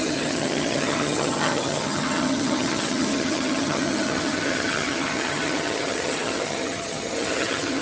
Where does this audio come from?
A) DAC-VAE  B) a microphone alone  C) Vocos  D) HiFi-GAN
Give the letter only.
D